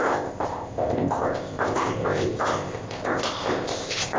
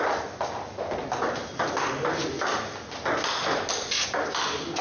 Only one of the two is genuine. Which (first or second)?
second